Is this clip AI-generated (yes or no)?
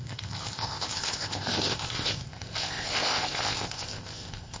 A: yes